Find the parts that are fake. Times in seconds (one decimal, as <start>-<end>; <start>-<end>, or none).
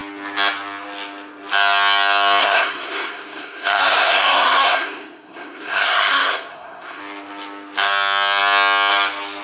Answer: 2.4-7.0